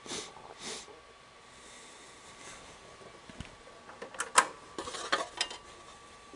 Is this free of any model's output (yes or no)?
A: yes